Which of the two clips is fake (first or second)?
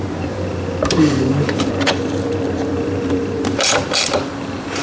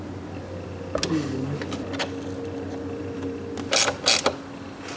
first